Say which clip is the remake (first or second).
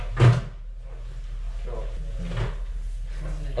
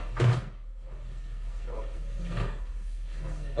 second